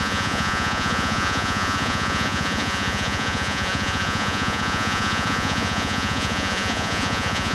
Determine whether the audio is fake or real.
fake